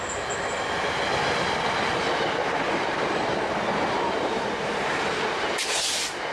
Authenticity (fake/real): real